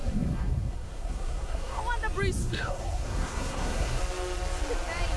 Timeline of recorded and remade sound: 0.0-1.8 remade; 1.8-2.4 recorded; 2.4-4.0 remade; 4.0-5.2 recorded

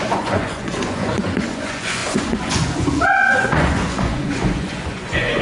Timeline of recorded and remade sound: 0.0-5.4 remade

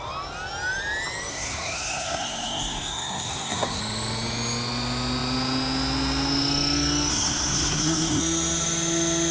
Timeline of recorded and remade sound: 0.0-1.3 recorded; 1.3-3.8 remade; 3.8-7.1 recorded; 7.1-8.2 remade; 8.2-9.3 recorded

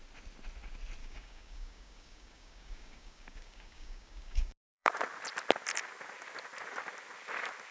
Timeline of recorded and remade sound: 0.0-1.0 recorded; 1.0-4.9 remade; 4.9-7.7 recorded

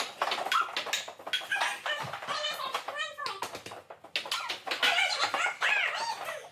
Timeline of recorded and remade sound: 0.0-6.5 recorded

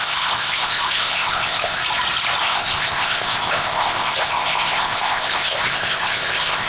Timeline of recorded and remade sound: 0.0-1.8 remade; 1.8-2.4 recorded; 2.4-6.7 remade

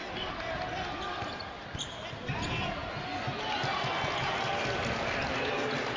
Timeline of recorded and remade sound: 0.0-6.0 recorded

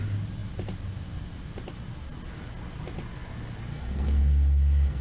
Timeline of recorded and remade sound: 0.0-3.7 recorded; 3.7-5.0 remade